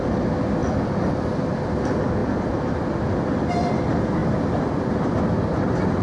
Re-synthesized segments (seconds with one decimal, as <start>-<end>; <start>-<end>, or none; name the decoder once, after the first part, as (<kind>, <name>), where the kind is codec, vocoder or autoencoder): none